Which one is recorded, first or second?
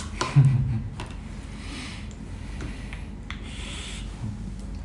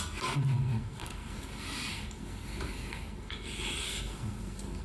first